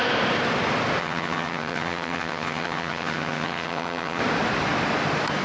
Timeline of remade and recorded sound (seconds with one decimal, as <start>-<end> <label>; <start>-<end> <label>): 0.0-1.0 recorded; 1.0-4.2 remade; 4.2-5.4 recorded